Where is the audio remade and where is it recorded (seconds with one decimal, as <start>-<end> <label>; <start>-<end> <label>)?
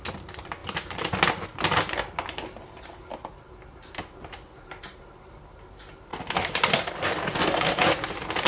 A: 0.0-8.5 recorded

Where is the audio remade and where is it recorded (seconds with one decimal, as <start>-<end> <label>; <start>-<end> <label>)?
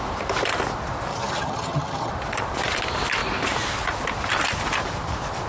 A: 0.0-1.1 recorded; 1.1-2.1 remade; 2.1-5.5 recorded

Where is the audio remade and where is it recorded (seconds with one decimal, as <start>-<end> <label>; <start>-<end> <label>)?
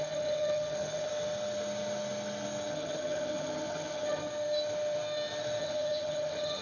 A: 0.0-1.1 remade; 1.1-2.7 recorded; 2.7-4.2 remade; 4.2-5.6 recorded; 5.6-6.6 remade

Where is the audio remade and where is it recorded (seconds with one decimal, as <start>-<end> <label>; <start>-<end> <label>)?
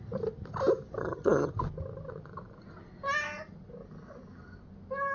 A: 0.0-1.0 recorded; 1.0-1.5 remade; 1.5-5.1 recorded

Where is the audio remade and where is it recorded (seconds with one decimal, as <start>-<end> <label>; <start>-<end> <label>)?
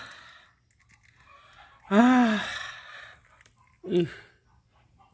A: 0.0-5.1 recorded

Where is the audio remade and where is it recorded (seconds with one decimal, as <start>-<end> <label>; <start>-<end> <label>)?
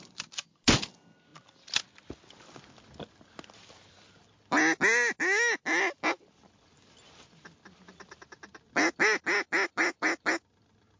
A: 0.0-11.0 recorded